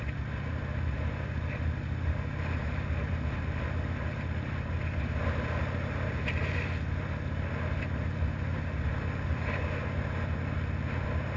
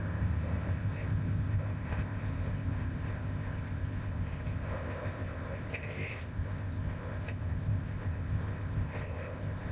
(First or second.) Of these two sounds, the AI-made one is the second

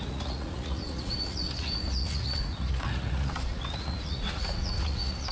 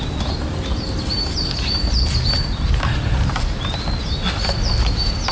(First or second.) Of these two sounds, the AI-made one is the first